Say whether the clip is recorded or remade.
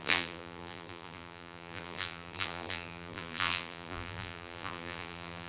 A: remade